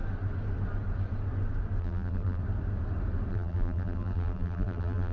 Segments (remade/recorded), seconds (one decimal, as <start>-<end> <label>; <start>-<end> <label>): 0.0-1.8 recorded; 1.8-2.4 remade; 2.4-3.3 recorded; 3.3-5.1 remade